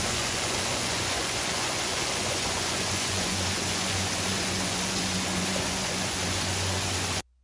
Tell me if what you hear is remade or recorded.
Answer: remade